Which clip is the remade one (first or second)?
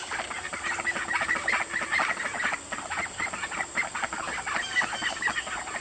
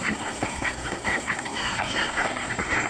second